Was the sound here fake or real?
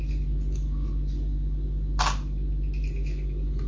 real